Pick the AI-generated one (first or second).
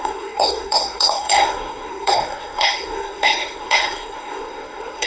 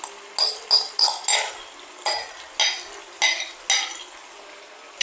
first